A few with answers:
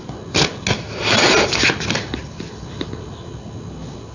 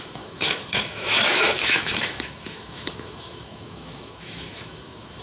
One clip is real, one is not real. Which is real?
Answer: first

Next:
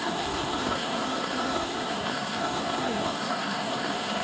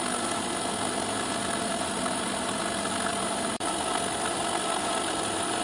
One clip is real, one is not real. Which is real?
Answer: second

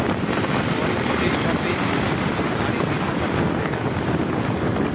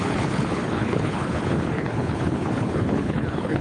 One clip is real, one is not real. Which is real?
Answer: first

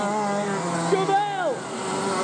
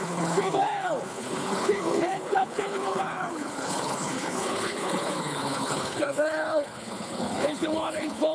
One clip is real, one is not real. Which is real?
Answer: first